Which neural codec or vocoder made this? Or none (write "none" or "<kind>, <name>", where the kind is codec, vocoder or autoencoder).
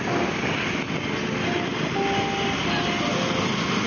none